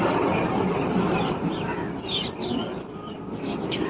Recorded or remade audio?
recorded